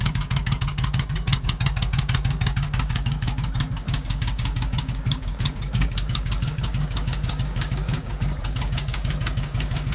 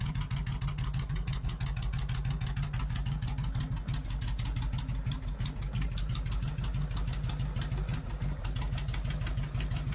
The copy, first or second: first